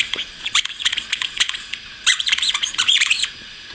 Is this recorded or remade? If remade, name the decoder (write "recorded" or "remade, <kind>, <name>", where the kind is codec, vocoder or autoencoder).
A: remade, vocoder, Vocos